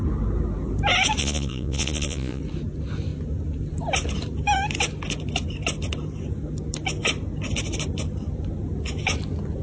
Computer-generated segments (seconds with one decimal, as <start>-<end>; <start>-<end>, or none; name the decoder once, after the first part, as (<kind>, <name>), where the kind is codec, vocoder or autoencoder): 1.2-2.4 (vocoder, Vocos)